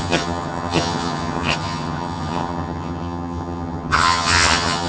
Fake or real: fake